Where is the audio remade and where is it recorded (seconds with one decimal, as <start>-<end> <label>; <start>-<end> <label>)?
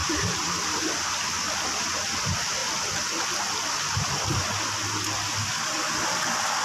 0.0-0.9 remade; 0.9-6.6 recorded